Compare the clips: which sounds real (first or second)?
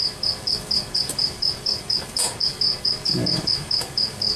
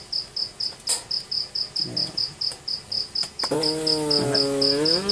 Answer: second